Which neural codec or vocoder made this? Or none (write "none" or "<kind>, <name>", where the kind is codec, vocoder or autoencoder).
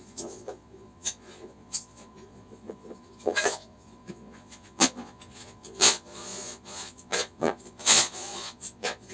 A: vocoder, Vocos